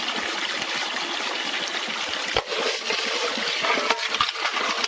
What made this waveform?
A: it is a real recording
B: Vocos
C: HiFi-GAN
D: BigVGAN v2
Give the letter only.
D